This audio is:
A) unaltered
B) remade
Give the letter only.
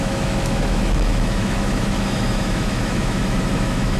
B